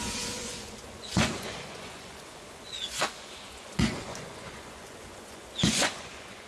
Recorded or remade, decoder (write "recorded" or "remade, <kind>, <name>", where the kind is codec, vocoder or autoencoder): remade, vocoder, Vocos